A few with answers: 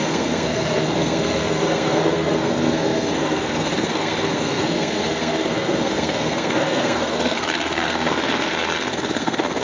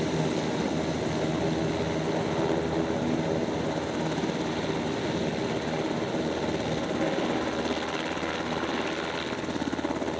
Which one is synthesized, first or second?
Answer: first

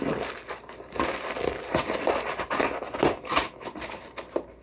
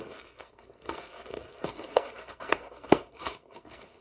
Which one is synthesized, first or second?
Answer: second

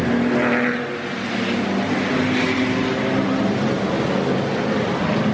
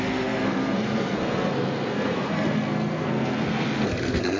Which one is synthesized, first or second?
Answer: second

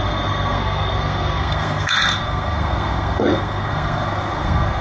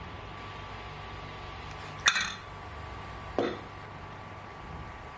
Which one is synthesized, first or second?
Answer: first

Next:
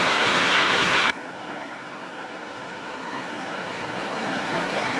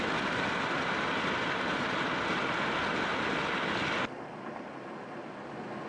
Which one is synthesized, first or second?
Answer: first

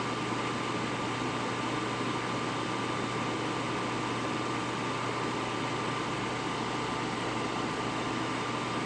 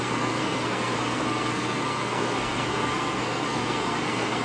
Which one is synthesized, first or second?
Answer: second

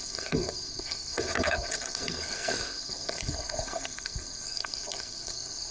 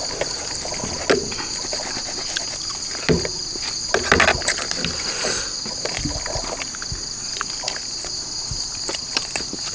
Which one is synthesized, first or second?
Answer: first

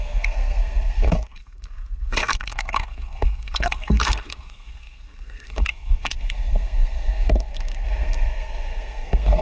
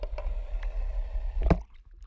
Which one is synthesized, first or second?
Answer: first